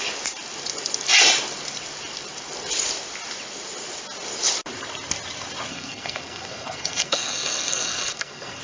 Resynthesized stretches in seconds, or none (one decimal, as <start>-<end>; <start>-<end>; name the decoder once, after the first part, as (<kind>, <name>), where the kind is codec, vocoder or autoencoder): 5.7-8.6 (codec, SNAC)